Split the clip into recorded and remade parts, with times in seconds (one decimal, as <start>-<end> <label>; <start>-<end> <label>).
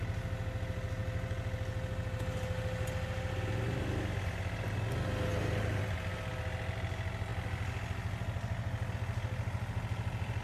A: 0.0-10.4 recorded